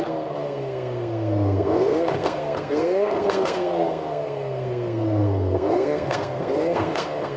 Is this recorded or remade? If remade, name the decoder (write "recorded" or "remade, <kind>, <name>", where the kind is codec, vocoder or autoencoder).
remade, codec, SNAC